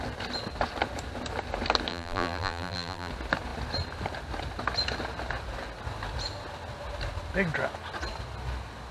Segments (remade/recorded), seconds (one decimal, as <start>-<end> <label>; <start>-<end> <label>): 0.0-1.9 recorded; 1.9-3.1 remade; 3.1-8.9 recorded